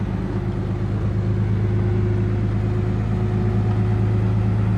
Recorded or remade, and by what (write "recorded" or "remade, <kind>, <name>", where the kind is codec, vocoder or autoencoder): recorded